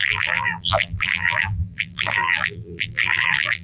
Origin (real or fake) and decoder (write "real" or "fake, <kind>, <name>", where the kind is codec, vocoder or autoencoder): fake, vocoder, BigVGAN v2